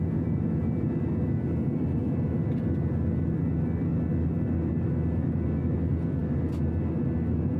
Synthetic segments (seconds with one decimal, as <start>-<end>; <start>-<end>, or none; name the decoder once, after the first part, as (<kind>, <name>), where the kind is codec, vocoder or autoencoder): none